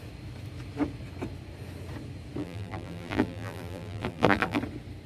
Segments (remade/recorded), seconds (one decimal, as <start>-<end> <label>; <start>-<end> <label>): 0.0-2.4 recorded; 2.4-4.6 remade; 4.6-5.1 recorded

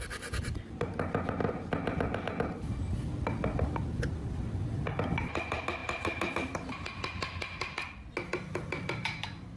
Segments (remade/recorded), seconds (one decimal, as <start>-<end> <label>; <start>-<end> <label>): 0.0-9.6 recorded

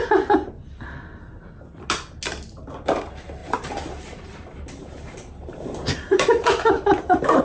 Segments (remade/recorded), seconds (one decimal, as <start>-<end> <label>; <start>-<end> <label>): 0.0-3.4 recorded; 3.4-7.4 remade

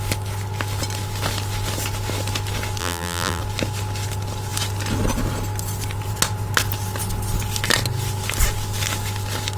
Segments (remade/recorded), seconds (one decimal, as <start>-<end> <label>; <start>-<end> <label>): 0.0-2.8 recorded; 2.8-3.4 remade; 3.4-9.6 recorded